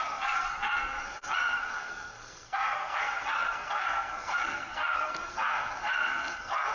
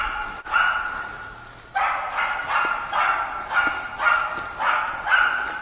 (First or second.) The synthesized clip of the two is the first